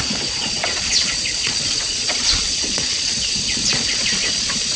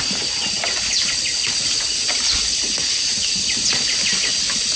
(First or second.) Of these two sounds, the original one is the second